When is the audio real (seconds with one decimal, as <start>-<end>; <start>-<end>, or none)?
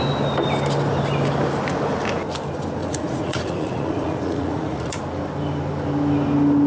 0.0-2.8; 5.0-6.7